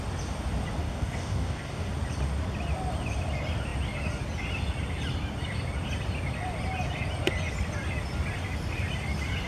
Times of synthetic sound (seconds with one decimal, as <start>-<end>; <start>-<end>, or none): 0.8-1.9